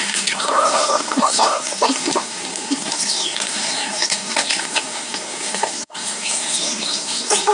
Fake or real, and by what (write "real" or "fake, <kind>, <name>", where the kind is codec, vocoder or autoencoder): fake, codec, SNAC